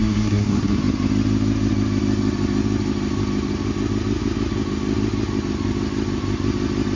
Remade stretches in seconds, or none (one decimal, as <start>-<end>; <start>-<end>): 0.0-0.8